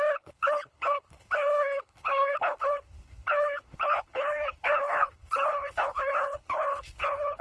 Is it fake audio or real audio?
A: fake